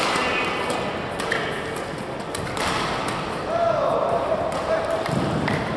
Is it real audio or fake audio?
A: real